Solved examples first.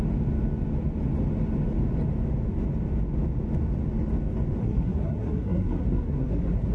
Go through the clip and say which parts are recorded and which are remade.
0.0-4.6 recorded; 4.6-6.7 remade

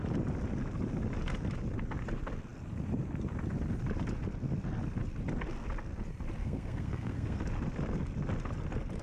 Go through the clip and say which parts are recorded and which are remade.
0.0-6.4 recorded; 6.4-7.4 remade; 7.4-9.0 recorded

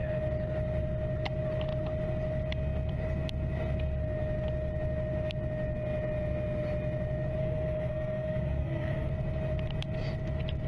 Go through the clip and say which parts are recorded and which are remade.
0.0-7.4 recorded; 7.4-9.1 remade; 9.1-10.7 recorded